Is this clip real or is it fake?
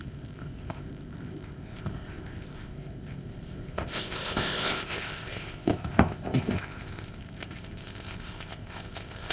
fake